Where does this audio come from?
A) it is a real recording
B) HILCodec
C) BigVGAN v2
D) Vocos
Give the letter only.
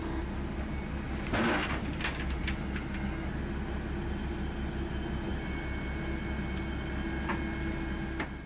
A